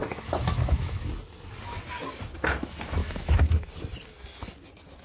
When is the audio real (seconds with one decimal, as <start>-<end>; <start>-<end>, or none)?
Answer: 1.1-3.0; 3.7-5.0